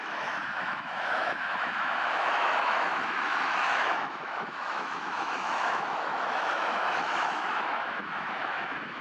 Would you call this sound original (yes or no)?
no